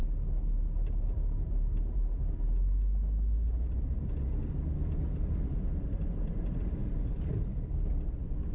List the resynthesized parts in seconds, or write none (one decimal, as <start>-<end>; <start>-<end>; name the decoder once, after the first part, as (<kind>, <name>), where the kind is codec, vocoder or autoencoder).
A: none